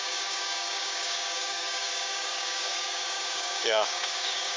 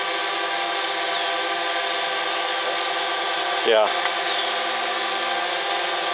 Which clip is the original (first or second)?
second